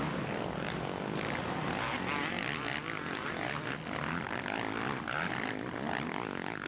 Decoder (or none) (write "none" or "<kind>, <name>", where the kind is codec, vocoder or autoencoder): none